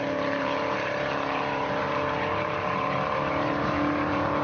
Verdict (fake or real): fake